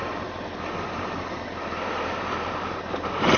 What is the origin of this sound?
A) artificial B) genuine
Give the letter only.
B